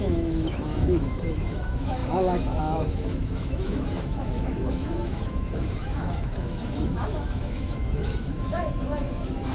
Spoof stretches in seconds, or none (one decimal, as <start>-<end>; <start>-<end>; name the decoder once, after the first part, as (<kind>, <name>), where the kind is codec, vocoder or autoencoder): 0.0-9.5 (autoencoder, DAC-VAE)